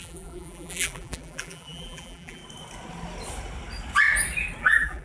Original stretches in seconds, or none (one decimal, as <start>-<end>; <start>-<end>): 2.4-4.6